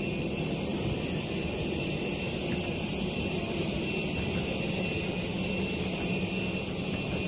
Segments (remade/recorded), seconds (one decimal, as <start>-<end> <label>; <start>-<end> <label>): 0.0-7.3 recorded